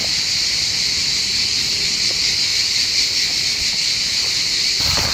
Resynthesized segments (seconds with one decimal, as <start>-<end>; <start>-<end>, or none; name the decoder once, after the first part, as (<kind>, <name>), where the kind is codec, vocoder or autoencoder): 2.5-3.7 (vocoder, BigVGAN v2)